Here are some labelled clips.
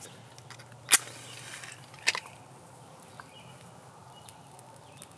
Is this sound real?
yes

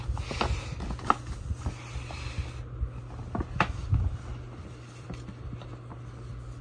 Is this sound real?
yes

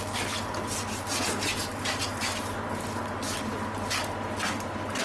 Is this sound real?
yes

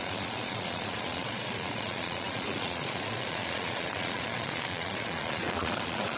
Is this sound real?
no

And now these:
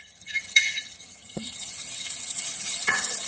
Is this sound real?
no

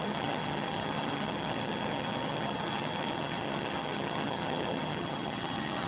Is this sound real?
no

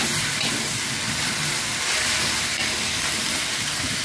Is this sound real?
yes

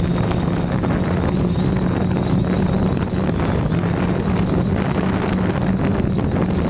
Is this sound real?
yes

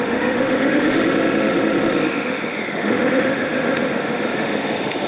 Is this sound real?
no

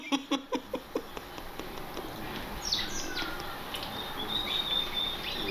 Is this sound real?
yes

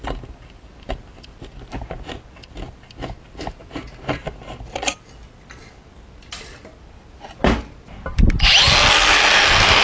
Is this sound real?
yes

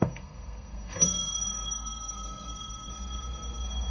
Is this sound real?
no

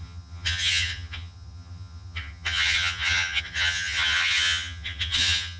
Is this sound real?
no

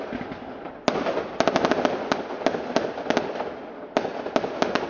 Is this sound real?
yes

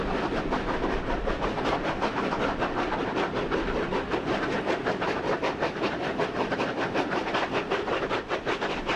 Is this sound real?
yes